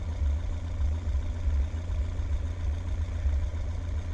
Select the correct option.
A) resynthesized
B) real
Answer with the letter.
A